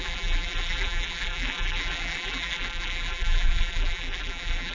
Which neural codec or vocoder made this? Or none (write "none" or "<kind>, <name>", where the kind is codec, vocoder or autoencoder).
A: vocoder, BigVGAN v2